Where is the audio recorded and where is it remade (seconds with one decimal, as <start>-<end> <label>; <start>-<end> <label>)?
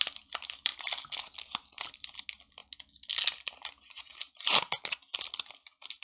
0.0-6.0 recorded